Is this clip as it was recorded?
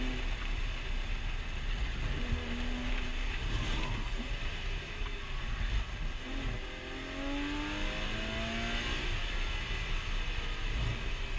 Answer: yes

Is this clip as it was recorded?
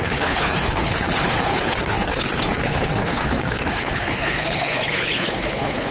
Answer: no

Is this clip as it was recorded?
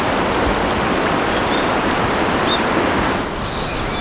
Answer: yes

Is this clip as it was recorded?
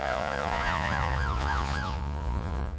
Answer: no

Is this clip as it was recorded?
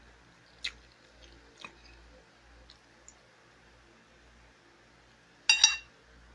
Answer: yes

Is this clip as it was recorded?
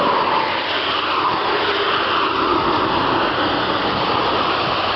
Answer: yes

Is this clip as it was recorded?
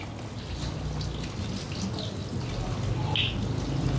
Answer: yes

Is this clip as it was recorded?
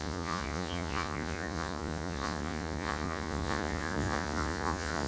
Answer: no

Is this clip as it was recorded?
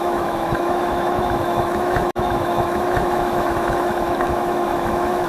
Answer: no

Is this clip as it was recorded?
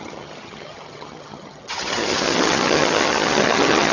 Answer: no